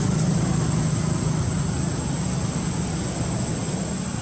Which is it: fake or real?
real